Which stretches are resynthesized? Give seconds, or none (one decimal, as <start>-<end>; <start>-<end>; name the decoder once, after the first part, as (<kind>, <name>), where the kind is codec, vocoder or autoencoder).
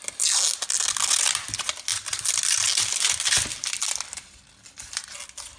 none